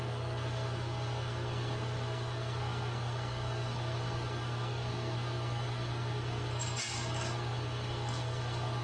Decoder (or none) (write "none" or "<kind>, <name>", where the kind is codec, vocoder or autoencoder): codec, SNAC